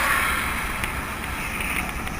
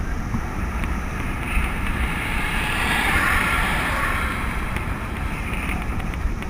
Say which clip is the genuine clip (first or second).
first